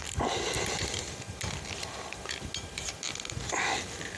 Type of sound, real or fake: real